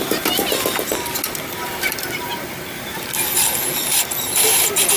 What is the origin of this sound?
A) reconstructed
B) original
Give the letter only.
B